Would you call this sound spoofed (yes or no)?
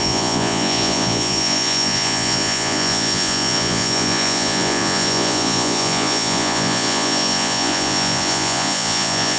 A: yes